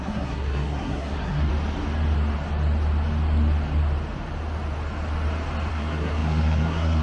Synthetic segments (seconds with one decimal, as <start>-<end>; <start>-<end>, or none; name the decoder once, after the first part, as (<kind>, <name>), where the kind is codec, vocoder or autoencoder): 0.0-1.5 (codec, SNAC); 5.7-7.0